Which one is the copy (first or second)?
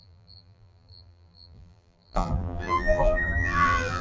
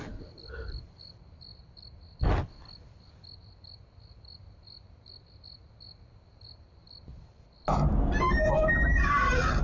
first